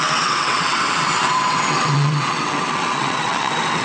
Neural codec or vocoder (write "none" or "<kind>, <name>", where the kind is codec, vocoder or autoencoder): vocoder, WaveNeXt